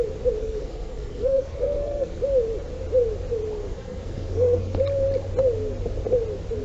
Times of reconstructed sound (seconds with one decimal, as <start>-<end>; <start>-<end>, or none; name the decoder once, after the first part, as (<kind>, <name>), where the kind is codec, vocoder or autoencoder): 0.4-2.2 (codec, SNAC); 3.6-4.8